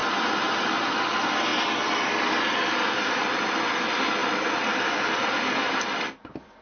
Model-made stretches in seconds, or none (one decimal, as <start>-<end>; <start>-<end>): 0.0-0.5